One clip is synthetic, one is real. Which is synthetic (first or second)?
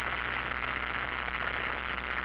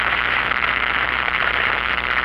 second